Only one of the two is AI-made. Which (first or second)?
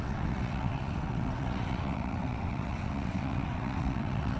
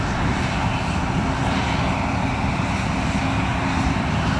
first